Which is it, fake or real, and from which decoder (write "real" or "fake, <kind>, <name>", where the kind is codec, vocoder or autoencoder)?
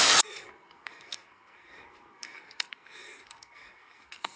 fake, codec, SNAC